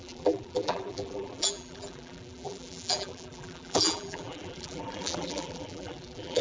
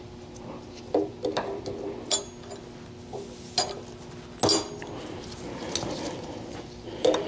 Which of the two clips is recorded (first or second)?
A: second